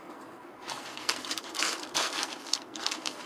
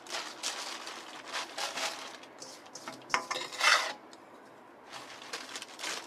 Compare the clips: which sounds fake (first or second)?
first